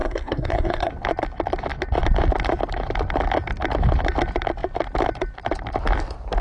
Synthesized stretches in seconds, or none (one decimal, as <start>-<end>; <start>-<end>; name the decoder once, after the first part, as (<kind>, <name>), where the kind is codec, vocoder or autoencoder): 0.0-0.9 (codec, SNAC)